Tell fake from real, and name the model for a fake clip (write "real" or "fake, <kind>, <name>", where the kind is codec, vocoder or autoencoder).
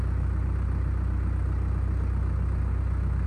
real